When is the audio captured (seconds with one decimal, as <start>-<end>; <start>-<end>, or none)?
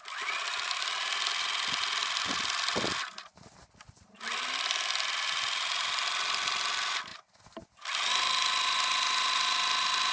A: 0.0-10.1